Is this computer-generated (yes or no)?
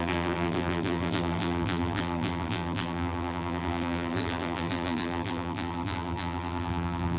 yes